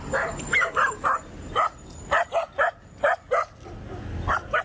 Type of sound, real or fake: real